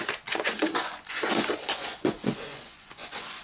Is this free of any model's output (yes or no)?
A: no